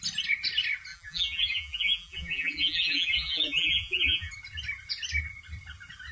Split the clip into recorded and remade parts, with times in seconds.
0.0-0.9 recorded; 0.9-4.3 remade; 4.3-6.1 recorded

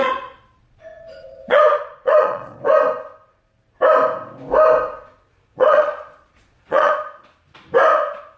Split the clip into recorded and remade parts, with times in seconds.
0.0-2.6 remade; 2.6-5.5 recorded; 5.5-6.9 remade; 6.9-8.4 recorded

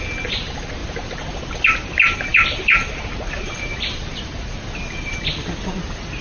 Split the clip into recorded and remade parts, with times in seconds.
0.0-0.8 recorded; 0.8-1.5 remade; 1.5-2.3 recorded; 2.3-5.3 remade; 5.3-6.2 recorded

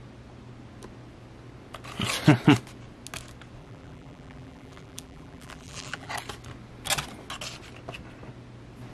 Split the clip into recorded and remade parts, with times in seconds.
0.0-3.6 recorded; 3.6-6.1 remade; 6.1-8.9 recorded

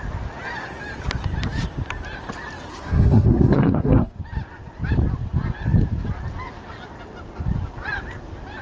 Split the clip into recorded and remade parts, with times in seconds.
0.0-2.7 recorded; 2.7-4.2 remade; 4.2-8.6 recorded

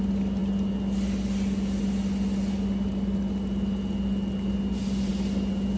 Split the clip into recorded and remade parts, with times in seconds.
0.0-5.8 recorded